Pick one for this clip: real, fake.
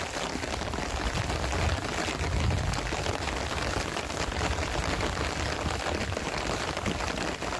real